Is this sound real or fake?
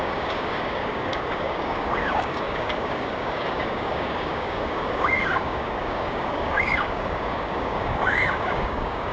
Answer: fake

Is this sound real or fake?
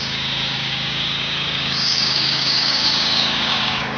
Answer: fake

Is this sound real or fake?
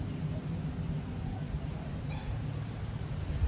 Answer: real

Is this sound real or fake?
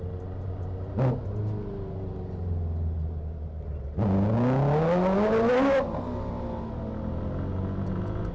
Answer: real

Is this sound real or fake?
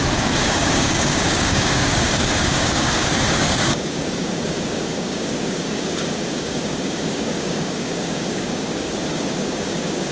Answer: fake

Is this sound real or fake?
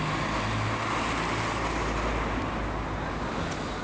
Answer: real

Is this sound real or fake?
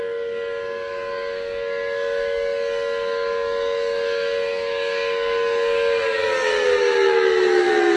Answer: fake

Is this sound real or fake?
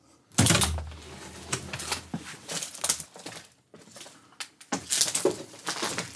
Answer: real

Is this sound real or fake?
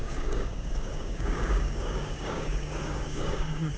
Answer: fake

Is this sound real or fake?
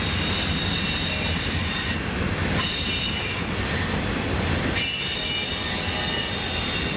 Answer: real